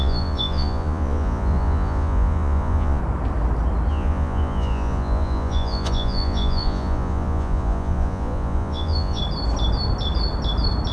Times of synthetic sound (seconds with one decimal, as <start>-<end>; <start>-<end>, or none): 0.0-3.0; 3.9-9.2